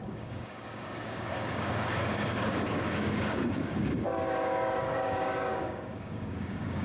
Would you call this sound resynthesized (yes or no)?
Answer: yes